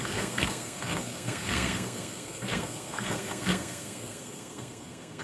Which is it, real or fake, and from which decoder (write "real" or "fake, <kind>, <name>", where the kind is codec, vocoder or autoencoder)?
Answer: fake, codec, SNAC